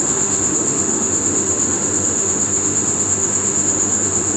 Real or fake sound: fake